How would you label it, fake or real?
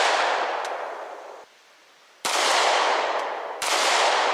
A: fake